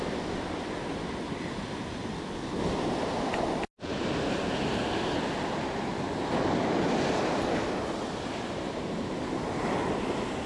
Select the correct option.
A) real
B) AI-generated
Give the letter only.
A